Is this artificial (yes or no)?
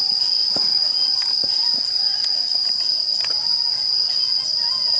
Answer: no